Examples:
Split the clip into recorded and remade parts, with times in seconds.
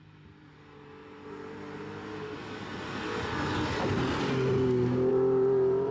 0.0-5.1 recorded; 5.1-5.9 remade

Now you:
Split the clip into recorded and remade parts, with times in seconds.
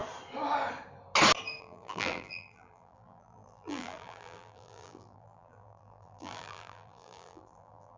0.0-1.6 recorded; 1.6-8.0 remade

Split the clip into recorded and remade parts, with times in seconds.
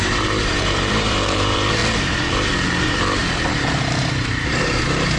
0.0-1.8 remade; 1.8-2.8 recorded; 2.8-3.2 remade; 3.2-4.0 recorded; 4.0-5.2 remade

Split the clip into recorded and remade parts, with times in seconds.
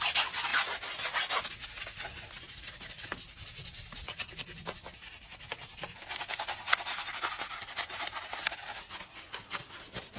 0.0-0.5 remade; 0.5-2.6 recorded; 2.6-5.3 remade; 5.3-10.2 recorded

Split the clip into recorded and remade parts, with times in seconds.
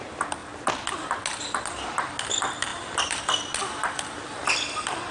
0.0-2.7 recorded; 2.7-3.2 remade; 3.2-5.1 recorded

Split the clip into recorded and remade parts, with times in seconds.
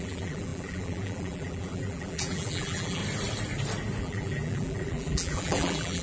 0.0-3.0 remade; 3.0-4.0 recorded; 4.0-6.0 remade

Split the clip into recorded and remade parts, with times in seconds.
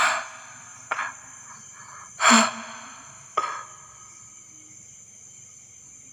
0.0-0.7 recorded; 0.7-2.3 remade; 2.3-6.1 recorded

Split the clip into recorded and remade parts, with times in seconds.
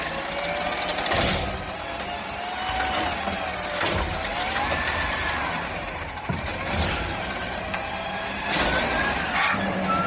0.0-4.3 recorded; 4.3-8.4 remade; 8.4-10.1 recorded